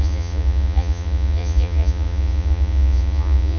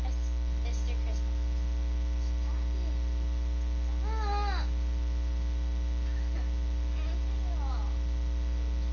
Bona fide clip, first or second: second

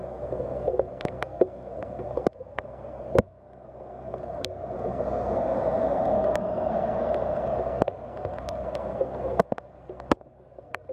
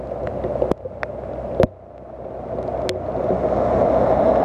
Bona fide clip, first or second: second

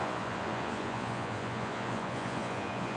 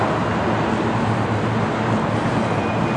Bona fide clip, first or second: second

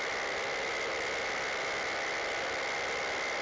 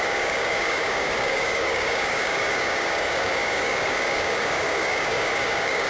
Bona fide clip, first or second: first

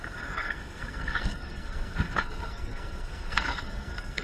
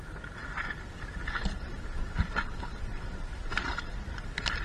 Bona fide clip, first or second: second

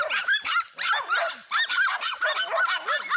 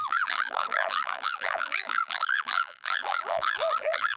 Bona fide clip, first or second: first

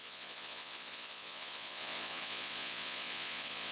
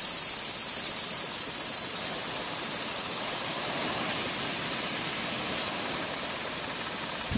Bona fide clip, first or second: second